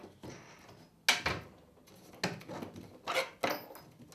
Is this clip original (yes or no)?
yes